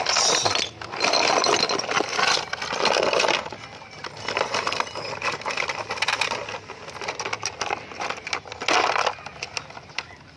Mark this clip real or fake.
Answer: real